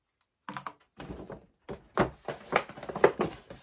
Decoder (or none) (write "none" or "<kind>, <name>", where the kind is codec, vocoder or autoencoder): none